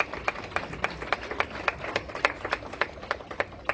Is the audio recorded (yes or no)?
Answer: yes